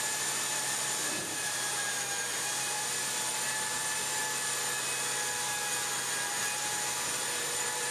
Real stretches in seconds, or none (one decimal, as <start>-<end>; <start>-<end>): 4.2-6.3

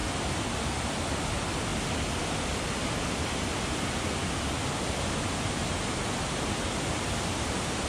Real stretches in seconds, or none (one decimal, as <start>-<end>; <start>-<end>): 0.0-7.9